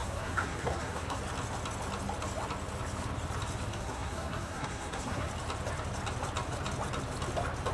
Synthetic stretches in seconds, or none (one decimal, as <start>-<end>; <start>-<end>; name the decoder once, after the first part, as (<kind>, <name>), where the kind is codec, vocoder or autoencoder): 0.0-1.2 (codec, SNAC); 3.7-5.3